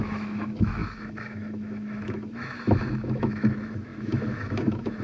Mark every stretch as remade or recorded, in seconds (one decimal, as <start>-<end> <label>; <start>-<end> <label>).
0.0-5.0 remade